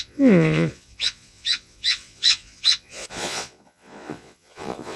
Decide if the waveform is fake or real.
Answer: fake